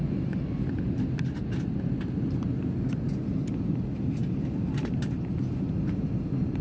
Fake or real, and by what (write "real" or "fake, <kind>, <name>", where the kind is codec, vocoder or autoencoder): real